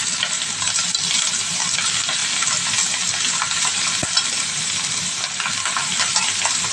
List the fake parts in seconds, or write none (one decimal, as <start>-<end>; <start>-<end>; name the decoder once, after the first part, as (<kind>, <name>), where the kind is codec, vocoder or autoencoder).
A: none